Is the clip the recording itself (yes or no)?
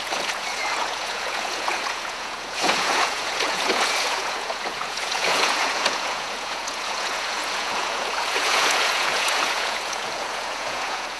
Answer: no